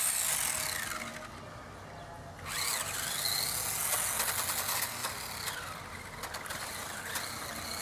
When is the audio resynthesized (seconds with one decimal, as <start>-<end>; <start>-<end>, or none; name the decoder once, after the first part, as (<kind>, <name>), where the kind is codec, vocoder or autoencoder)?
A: 5.0-5.9 (vocoder, BigVGAN v2)